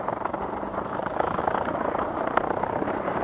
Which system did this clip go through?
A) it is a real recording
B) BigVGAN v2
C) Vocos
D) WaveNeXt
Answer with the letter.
B